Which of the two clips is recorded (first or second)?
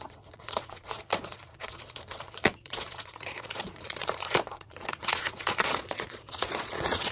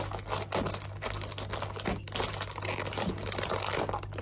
second